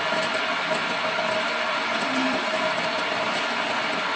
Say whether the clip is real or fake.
real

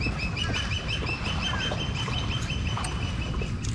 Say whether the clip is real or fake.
real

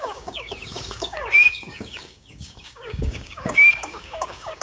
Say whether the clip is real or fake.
fake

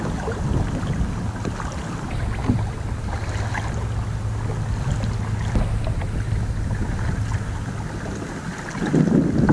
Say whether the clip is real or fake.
real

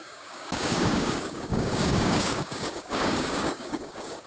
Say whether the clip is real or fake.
fake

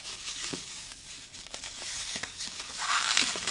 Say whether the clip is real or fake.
fake